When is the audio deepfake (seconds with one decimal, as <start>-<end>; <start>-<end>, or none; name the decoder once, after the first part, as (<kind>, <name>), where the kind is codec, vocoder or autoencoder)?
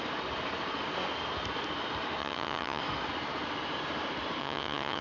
2.2-2.8 (vocoder, HiFi-GAN); 4.4-5.0